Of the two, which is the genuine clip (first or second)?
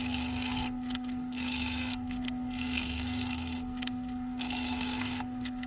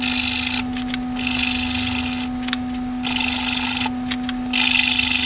second